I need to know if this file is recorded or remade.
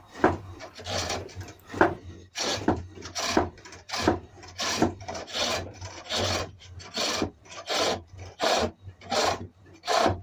remade